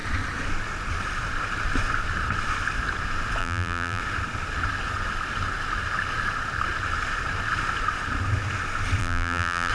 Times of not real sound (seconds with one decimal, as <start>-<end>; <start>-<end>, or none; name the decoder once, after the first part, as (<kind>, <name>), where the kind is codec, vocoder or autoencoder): 3.4-4.0 (vocoder, BigVGAN v2); 9.0-9.7

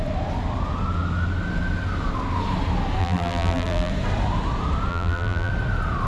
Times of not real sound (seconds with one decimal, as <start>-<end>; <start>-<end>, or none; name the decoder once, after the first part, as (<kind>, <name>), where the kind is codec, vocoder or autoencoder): 3.0-3.9 (vocoder, BigVGAN v2); 4.9-5.5

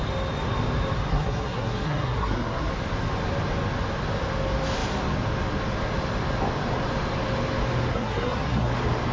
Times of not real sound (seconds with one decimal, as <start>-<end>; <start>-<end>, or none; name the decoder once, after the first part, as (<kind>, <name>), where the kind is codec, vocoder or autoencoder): 1.1-2.7 (codec, SNAC); 7.9-8.7

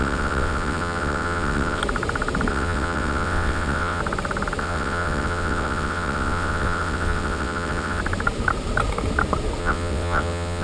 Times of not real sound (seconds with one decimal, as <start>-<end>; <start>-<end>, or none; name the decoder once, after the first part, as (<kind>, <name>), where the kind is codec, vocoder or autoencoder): 0.0-1.8 (vocoder, WaveNeXt); 2.5-4.0; 4.6-8.0; 9.6-10.6